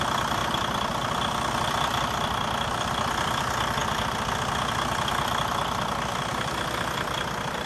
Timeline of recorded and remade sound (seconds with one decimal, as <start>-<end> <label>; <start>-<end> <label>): 0.0-0.4 remade; 0.4-2.8 recorded; 2.8-3.8 remade; 3.8-6.3 recorded; 6.3-7.7 remade